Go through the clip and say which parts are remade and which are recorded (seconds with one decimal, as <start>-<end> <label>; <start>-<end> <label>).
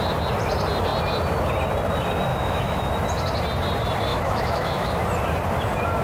0.0-2.3 recorded; 2.3-2.9 remade; 2.9-4.1 recorded; 4.1-4.9 remade; 4.9-6.0 recorded